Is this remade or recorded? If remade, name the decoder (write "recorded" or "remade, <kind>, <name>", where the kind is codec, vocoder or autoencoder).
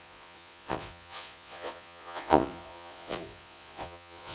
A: remade, vocoder, Vocos